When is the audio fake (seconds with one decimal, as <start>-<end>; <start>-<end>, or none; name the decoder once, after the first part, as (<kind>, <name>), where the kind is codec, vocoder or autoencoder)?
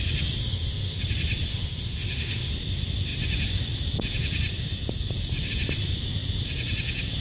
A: 0.4-1.0 (autoencoder, DAC-VAE); 1.5-2.5